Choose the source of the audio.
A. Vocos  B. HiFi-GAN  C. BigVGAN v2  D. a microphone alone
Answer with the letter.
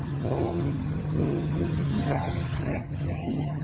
B